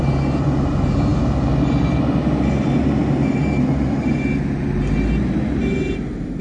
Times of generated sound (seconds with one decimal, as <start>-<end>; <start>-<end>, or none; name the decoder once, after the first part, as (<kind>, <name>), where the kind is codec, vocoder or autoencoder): none